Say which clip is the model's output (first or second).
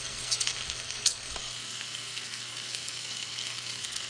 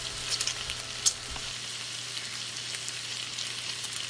first